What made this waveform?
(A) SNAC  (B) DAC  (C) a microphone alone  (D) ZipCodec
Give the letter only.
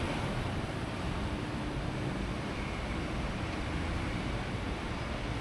C